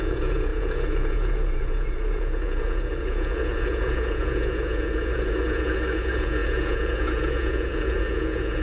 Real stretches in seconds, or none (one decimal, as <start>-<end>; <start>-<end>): none